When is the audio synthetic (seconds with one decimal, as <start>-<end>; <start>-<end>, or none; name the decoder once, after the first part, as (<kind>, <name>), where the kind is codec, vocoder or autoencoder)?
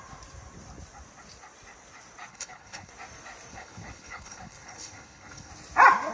2.3-2.9 (codec, HILCodec); 3.5-5.5